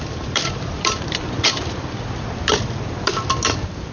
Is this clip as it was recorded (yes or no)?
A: no